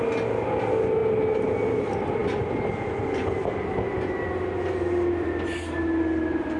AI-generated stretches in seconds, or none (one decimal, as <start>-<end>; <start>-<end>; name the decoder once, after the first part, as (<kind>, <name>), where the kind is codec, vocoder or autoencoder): none